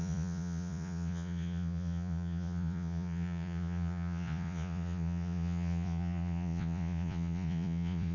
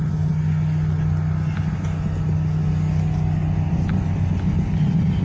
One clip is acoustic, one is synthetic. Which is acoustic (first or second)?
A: second